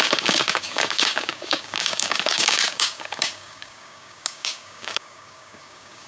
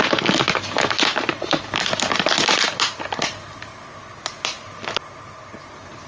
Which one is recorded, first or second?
second